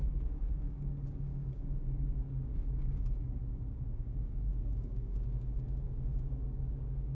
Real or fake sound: fake